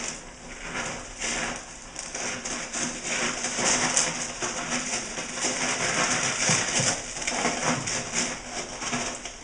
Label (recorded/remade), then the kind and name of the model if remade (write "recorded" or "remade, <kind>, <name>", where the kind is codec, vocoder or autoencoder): recorded